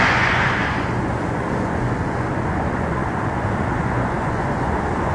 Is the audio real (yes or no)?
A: no